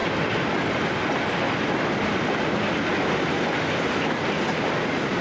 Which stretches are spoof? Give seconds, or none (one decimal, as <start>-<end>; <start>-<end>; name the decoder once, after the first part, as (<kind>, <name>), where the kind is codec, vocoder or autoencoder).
none